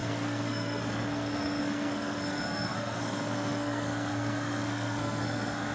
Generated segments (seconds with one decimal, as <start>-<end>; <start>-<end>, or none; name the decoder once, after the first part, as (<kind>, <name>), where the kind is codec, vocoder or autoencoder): 0.0-5.7 (codec, SNAC)